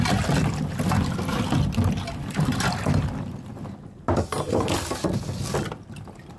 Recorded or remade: recorded